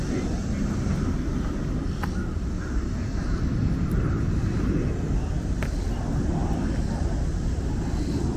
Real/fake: real